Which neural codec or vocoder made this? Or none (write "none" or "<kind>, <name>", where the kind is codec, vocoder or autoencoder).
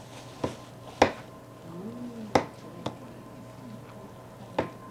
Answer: none